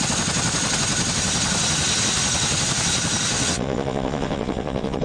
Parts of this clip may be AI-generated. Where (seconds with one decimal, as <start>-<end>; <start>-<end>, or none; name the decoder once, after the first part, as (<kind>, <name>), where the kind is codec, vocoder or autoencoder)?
3.3-5.0 (vocoder, WaveNeXt)